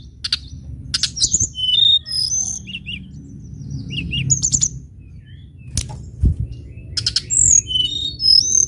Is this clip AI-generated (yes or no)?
no